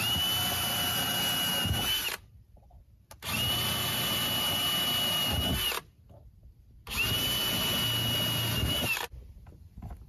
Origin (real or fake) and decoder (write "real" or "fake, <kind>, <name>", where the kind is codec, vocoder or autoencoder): real